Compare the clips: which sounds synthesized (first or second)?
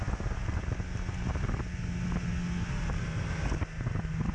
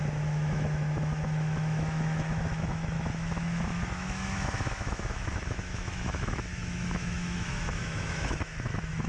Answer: second